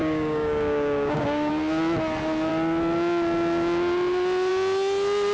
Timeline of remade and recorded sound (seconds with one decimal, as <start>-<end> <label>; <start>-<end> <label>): 0.0-1.5 remade; 1.5-5.3 recorded